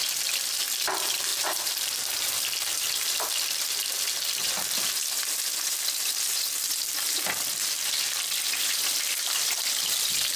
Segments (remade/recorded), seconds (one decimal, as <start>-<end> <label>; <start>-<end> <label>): 0.0-5.0 remade; 5.0-8.6 recorded; 8.6-10.4 remade